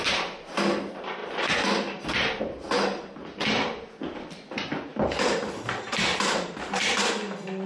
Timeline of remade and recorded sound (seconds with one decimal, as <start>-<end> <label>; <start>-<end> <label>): 0.0-4.9 recorded; 4.9-6.5 remade; 6.5-7.7 recorded